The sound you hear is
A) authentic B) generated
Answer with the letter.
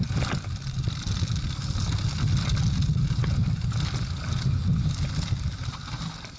A